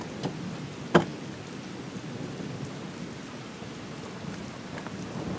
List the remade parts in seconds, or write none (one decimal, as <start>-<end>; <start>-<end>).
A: none